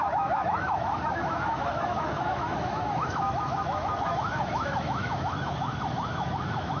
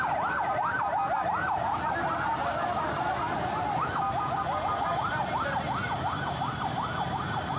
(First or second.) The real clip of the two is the second